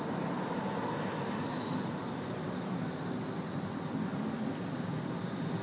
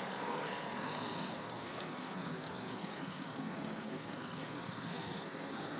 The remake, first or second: second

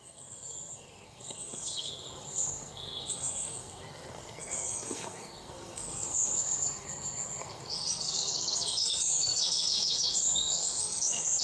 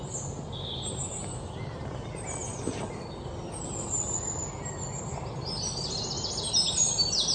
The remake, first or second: first